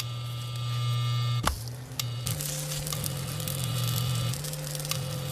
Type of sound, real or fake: real